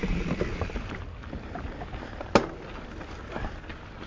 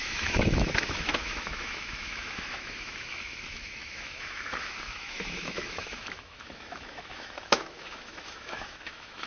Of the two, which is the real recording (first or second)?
first